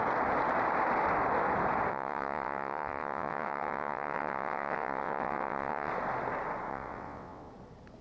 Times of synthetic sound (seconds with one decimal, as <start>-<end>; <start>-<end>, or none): 1.9-5.9; 6.7-7.5